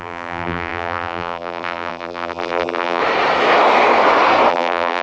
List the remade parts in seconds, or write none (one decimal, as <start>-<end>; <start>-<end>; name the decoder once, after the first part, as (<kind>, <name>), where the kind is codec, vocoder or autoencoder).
0.0-3.0 (vocoder, BigVGAN v2); 4.5-5.0